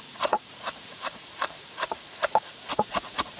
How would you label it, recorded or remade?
remade